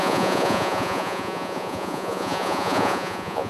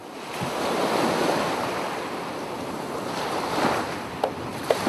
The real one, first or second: second